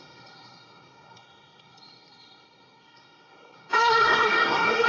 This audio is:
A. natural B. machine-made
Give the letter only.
B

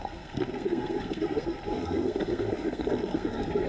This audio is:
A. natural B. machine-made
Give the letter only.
B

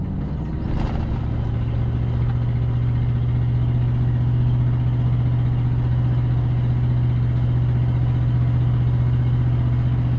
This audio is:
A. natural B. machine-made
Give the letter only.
A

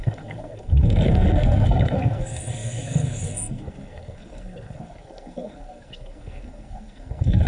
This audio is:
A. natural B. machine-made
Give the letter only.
B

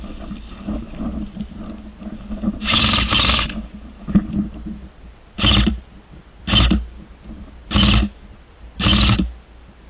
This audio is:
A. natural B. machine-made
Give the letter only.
A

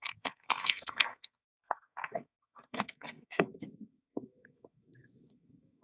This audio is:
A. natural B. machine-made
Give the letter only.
B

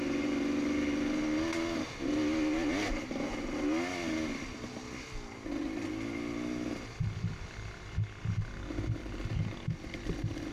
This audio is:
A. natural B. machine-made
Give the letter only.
A